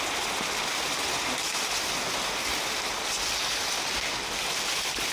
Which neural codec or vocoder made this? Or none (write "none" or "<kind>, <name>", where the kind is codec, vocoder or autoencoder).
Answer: none